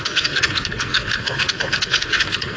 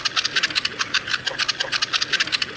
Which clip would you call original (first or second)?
second